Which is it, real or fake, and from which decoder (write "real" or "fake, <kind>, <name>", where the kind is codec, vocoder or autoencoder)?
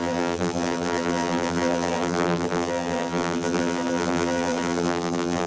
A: fake, vocoder, BigVGAN v2